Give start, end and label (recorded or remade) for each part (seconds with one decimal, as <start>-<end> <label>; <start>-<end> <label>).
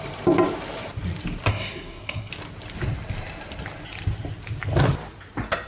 0.0-1.5 recorded; 1.5-2.3 remade; 2.3-5.7 recorded